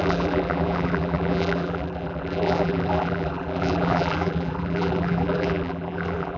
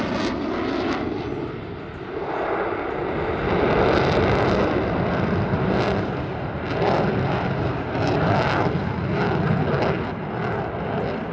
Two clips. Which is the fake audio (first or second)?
first